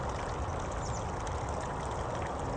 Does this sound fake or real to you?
real